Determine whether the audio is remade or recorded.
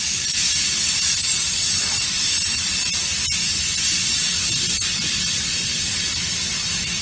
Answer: recorded